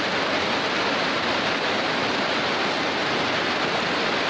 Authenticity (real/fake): real